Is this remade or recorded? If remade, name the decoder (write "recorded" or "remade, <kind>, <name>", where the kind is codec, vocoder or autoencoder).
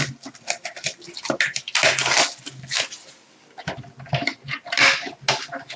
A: recorded